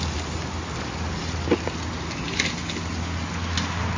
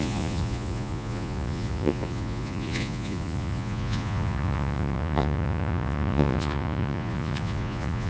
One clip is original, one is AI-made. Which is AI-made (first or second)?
second